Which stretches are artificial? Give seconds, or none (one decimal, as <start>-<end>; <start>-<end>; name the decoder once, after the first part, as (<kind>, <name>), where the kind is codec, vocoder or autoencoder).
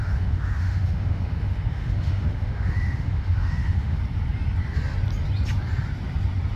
0.0-4.0 (autoencoder, DAC-VAE)